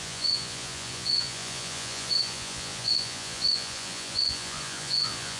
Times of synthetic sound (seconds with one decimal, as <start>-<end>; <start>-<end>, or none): 0.0-5.4